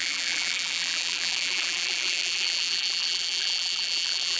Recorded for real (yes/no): no